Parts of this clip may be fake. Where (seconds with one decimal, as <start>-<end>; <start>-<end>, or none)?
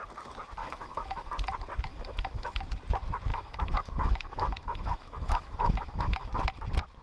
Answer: 0.6-1.3; 1.9-2.6; 3.3-6.3